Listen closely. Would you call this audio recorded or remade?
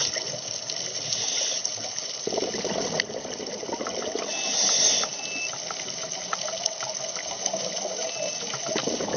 recorded